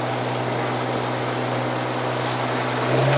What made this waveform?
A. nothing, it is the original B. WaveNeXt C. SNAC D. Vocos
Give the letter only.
A